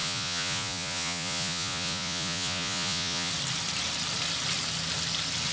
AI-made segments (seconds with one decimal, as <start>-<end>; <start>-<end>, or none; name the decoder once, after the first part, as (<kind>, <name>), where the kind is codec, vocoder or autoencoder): 0.0-3.3 (vocoder, Vocos)

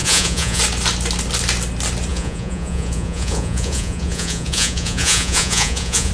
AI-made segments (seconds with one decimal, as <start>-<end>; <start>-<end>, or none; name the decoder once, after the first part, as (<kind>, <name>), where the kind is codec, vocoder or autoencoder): 0.0-0.6 (vocoder, Vocos); 2.1-6.1

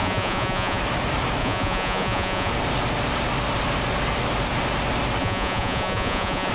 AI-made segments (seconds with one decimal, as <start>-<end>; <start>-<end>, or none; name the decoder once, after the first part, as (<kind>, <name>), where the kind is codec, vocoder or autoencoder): 0.0-0.8 (vocoder, Vocos); 1.4-2.5; 5.2-6.5

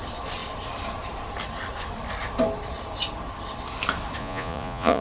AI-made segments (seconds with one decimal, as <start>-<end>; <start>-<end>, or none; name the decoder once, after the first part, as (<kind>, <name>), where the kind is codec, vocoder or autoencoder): 4.2-5.0 (vocoder, Vocos)

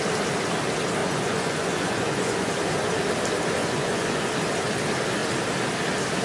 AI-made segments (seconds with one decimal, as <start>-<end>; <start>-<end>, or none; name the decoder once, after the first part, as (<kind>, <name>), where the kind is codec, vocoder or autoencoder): 1.0-2.5 (vocoder, Vocos); 3.6-4.3

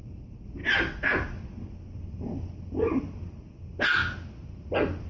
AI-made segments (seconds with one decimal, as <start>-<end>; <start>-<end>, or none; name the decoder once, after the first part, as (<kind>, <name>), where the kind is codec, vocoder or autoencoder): none

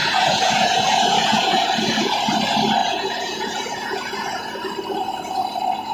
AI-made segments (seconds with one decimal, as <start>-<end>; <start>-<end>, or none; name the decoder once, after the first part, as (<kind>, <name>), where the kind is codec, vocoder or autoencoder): 0.0-2.2 (vocoder, Vocos); 2.8-4.6